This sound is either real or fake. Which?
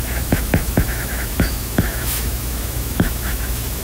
fake